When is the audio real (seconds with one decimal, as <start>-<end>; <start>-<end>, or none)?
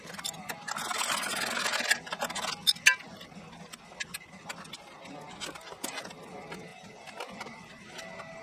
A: 0.0-6.7; 7.8-8.4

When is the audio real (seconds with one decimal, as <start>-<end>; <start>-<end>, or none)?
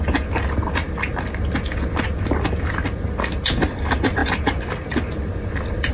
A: 0.0-5.9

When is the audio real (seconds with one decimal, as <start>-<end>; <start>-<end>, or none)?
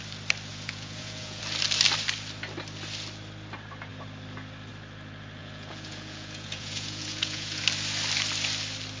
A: 0.0-0.5; 1.4-5.4; 7.6-9.0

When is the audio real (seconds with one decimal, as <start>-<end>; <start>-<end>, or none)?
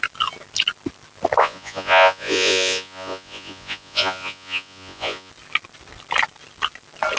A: 0.0-1.4; 5.3-7.2